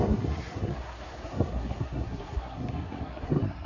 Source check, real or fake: fake